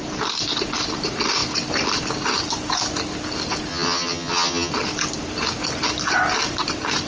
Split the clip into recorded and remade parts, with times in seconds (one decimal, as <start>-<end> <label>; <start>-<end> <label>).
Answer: 0.0-3.7 recorded; 3.7-4.7 remade; 4.7-7.1 recorded